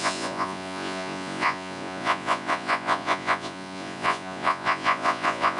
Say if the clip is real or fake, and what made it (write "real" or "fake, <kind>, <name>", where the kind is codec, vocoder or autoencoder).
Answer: fake, vocoder, Vocos